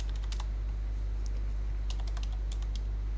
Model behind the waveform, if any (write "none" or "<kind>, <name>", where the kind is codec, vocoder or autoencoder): none